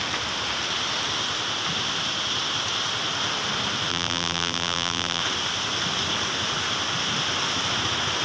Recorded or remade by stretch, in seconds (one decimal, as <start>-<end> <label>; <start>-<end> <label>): 0.0-3.9 recorded; 3.9-5.2 remade; 5.2-8.2 recorded